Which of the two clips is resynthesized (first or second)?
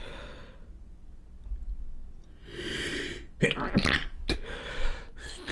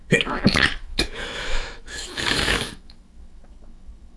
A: second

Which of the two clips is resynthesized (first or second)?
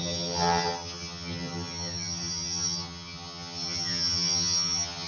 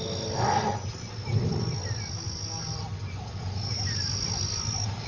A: first